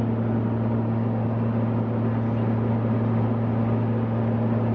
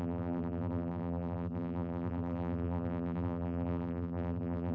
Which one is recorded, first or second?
first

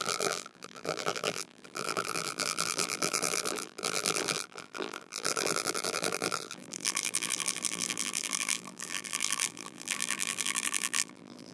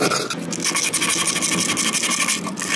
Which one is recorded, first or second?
second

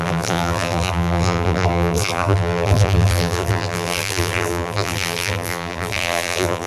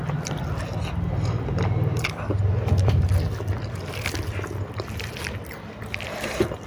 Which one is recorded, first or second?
second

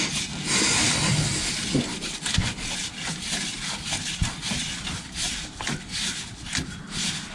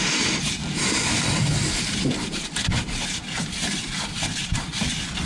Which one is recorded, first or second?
first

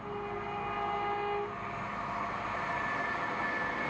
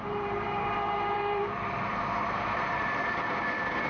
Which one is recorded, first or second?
first